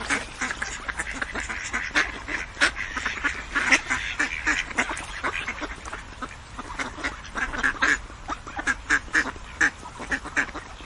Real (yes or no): yes